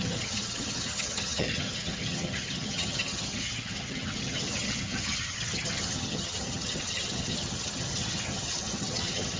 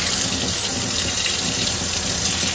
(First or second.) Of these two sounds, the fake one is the first